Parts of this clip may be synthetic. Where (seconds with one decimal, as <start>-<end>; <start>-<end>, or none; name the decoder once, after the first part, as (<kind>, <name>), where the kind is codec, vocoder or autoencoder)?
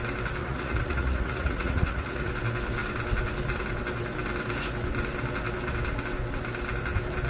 0.4-2.3 (vocoder, Vocos)